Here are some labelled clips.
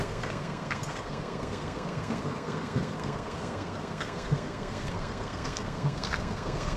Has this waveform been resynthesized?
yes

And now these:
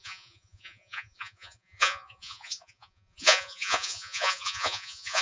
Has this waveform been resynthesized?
yes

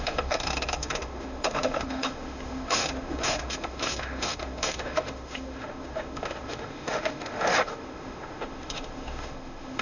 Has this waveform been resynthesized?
yes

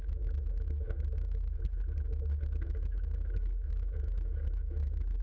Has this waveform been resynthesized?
yes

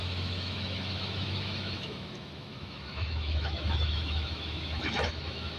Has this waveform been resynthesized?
yes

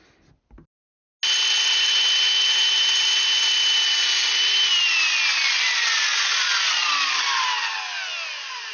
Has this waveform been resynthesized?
no